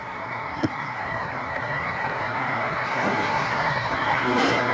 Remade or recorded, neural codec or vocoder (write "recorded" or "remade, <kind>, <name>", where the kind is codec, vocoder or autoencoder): remade, codec, SNAC